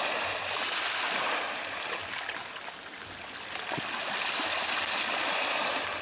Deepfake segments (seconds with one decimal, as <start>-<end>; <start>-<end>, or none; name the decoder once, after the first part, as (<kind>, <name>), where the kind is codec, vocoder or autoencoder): none